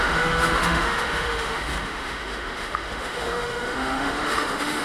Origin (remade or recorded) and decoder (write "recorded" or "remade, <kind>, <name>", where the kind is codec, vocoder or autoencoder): remade, autoencoder, DAC-VAE